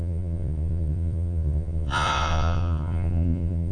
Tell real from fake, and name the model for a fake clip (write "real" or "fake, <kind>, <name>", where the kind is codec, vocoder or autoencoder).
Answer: fake, vocoder, Vocos